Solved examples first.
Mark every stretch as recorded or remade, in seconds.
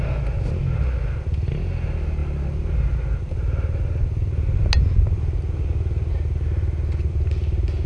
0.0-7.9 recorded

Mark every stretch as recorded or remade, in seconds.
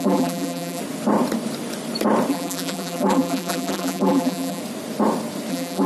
0.0-0.8 remade; 0.8-2.3 recorded; 2.3-4.6 remade; 4.6-5.5 recorded; 5.5-5.9 remade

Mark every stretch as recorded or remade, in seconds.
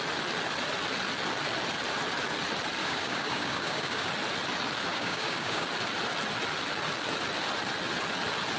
0.0-2.8 recorded; 2.8-4.1 remade; 4.1-4.9 recorded; 4.9-5.7 remade; 5.7-8.6 recorded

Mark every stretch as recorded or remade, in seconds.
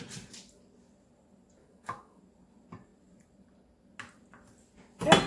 0.0-1.6 recorded; 1.6-2.2 remade; 2.2-5.3 recorded